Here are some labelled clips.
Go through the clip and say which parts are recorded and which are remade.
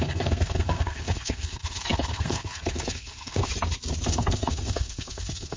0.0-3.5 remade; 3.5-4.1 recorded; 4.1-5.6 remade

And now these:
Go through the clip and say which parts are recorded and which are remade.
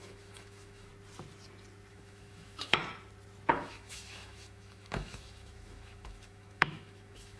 0.0-0.9 remade; 0.9-1.9 recorded; 1.9-2.8 remade; 2.8-3.5 recorded; 3.5-7.4 remade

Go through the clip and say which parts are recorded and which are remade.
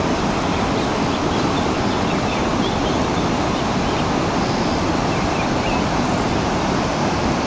0.0-7.5 recorded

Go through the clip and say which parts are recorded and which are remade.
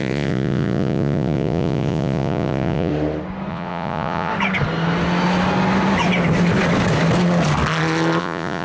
0.0-2.9 remade; 2.9-3.5 recorded; 3.5-4.3 remade; 4.3-8.2 recorded; 8.2-8.6 remade